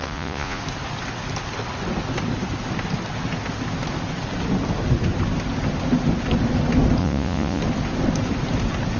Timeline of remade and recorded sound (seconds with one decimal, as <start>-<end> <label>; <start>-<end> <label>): 0.0-0.6 remade; 0.6-7.0 recorded; 7.0-7.6 remade; 7.6-9.0 recorded